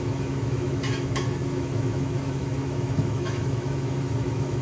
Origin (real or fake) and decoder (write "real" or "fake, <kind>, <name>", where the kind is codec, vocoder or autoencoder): fake, autoencoder, DAC-VAE